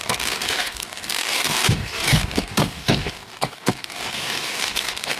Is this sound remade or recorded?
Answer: remade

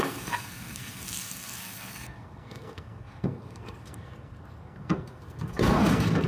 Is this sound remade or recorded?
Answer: remade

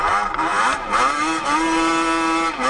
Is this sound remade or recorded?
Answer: recorded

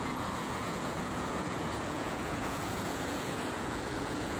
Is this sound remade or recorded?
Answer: remade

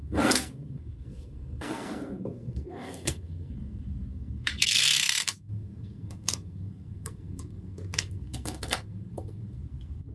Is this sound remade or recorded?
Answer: remade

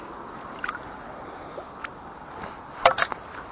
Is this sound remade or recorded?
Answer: recorded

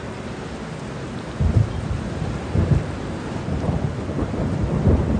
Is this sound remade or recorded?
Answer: recorded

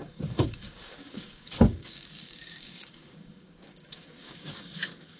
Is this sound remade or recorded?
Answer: remade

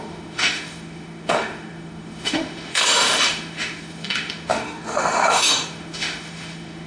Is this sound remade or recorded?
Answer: remade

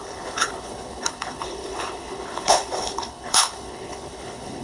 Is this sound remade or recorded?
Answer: remade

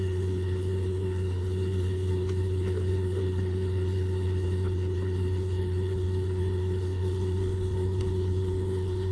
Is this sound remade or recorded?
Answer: remade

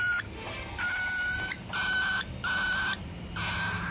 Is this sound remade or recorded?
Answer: recorded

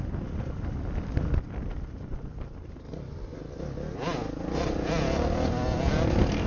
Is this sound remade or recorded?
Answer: recorded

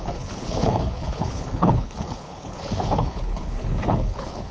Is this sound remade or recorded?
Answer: remade